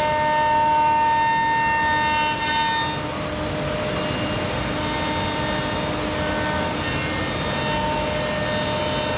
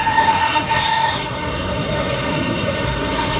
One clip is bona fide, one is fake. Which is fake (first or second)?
second